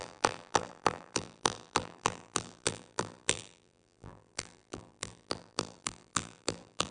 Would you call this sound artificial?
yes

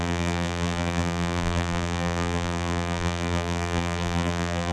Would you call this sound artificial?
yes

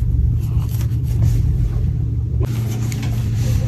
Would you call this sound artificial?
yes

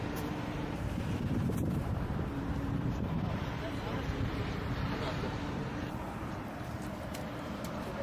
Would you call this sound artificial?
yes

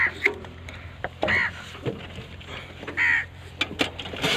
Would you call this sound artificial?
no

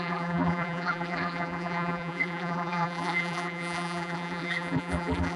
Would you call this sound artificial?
yes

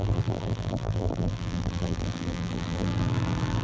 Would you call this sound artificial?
yes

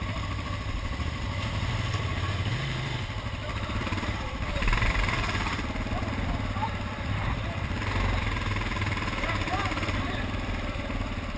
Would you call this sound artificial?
yes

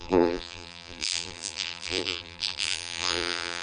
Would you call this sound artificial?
yes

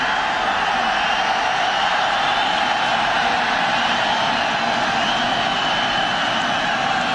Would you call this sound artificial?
no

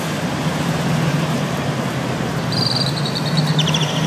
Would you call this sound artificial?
yes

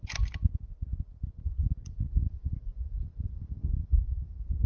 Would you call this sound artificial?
no